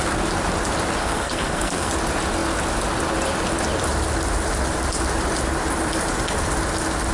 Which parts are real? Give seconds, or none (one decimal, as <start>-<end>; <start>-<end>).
0.0-1.0; 1.9-7.1